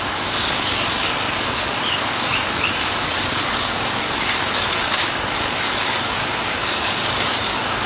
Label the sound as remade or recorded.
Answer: remade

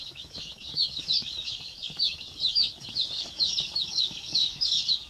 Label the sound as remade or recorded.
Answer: remade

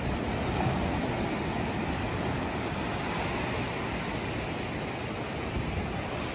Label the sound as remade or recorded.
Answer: recorded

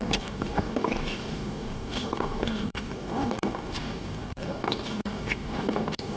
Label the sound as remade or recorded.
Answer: remade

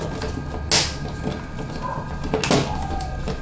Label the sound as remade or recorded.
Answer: recorded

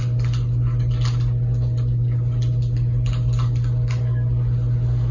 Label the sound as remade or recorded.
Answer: recorded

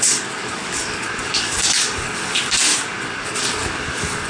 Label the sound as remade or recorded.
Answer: remade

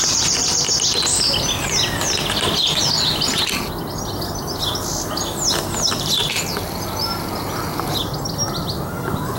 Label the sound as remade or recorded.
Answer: recorded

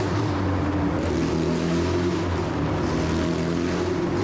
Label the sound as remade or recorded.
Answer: recorded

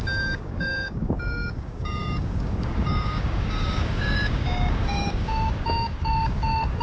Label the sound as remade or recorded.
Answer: remade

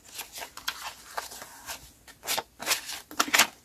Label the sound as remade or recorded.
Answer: recorded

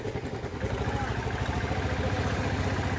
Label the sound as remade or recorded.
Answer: recorded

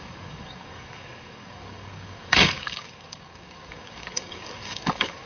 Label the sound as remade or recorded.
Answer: remade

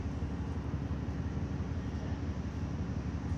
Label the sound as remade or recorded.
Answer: recorded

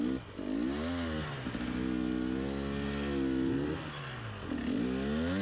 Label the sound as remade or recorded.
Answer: recorded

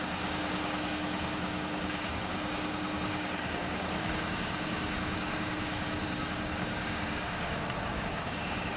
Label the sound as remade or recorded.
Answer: remade